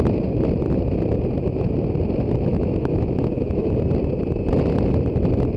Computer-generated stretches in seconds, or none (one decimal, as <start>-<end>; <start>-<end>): 2.5-3.7

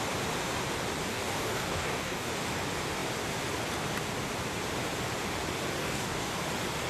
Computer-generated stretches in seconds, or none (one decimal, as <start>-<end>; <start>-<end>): 1.1-2.3; 5.8-6.3

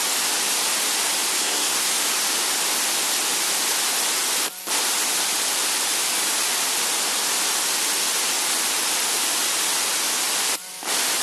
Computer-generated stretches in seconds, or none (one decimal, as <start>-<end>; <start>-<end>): 1.4-2.0

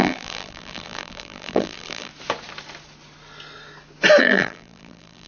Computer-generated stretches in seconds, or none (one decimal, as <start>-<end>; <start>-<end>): 0.0-2.1; 4.2-5.3

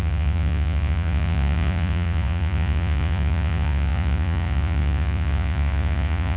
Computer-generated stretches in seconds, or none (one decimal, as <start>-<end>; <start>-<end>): 0.0-6.4